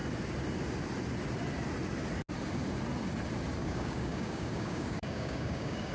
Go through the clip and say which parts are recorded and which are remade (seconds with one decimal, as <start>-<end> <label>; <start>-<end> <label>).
0.0-3.6 recorded; 3.6-5.9 remade